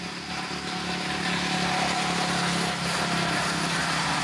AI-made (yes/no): no